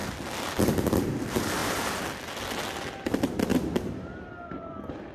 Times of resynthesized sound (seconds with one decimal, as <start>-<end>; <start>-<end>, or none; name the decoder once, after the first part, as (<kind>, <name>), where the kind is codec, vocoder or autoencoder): 0.0-0.5 (vocoder, BigVGAN v2); 3.5-4.3